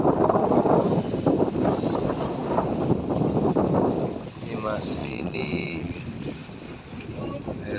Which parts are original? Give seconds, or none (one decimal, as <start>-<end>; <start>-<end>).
0.0-5.0; 6.0-7.8